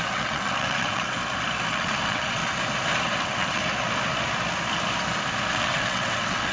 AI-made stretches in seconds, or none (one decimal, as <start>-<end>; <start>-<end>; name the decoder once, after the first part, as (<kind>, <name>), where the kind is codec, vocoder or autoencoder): 0.0-1.2 (vocoder, WaveNeXt); 1.7-2.4; 3.2-3.6; 5.5-6.5